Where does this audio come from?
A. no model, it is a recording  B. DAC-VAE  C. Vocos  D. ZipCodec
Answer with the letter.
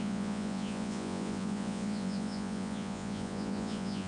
C